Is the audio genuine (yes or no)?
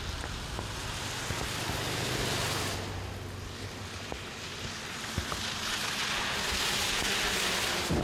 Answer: yes